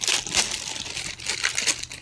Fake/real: fake